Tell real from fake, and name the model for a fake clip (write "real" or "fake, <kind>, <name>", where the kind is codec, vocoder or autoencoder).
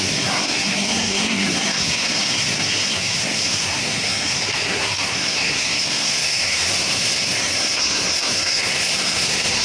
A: fake, codec, SNAC